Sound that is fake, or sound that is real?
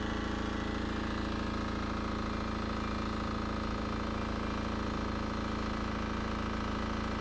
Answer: real